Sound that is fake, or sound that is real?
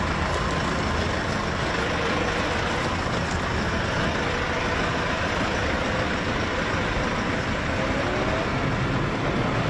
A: real